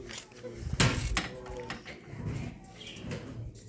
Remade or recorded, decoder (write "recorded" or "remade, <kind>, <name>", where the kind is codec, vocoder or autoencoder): recorded